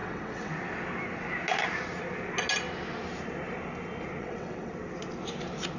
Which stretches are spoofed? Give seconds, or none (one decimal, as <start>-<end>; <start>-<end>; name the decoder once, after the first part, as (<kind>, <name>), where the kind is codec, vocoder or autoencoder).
0.0-0.5 (vocoder, WaveNeXt); 4.2-4.7

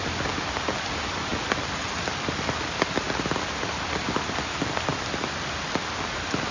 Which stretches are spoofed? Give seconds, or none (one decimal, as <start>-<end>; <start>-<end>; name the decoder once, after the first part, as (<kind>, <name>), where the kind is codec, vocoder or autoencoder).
none